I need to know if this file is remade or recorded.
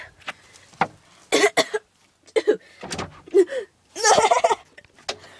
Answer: recorded